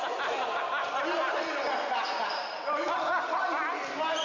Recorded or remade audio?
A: recorded